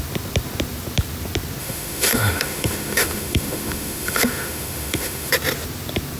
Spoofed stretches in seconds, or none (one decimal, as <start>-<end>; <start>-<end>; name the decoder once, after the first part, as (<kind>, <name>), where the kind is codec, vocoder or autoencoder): 1.6-5.3 (autoencoder, DAC-VAE)